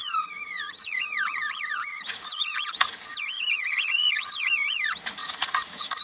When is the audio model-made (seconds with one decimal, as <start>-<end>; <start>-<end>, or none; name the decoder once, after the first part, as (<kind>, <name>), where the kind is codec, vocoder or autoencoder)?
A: 0.0-3.0 (vocoder, Vocos); 3.6-4.4; 5.2-6.0